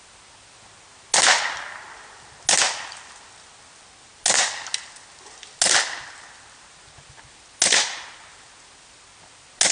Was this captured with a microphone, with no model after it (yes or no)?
yes